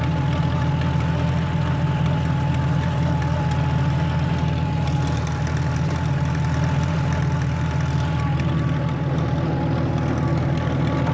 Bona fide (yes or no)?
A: yes